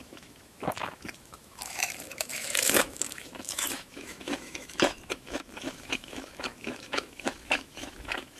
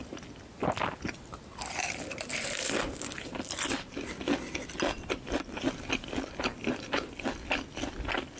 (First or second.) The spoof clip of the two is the first